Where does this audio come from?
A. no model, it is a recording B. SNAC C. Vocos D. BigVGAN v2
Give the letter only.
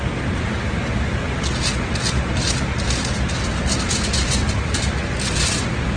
A